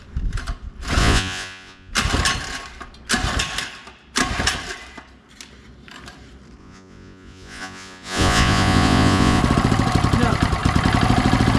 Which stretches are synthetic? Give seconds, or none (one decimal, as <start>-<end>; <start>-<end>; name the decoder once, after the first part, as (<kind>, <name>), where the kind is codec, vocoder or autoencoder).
1.0-1.9 (vocoder, Vocos); 6.6-9.4